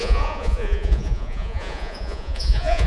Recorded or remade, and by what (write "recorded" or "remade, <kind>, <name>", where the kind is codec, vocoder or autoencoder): remade, vocoder, Vocos